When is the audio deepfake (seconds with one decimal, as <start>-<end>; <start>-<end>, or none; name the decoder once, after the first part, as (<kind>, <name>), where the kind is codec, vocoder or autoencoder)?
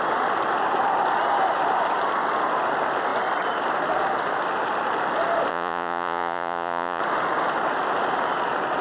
5.5-7.0 (vocoder, Vocos)